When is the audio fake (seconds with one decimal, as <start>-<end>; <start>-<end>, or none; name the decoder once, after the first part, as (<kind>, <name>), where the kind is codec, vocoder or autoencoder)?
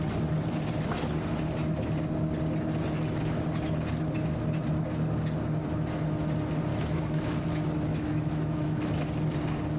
6.7-7.4 (autoencoder, DAC-VAE); 7.9-8.9